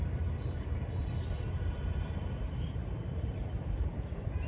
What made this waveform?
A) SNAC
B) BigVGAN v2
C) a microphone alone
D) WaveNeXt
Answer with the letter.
B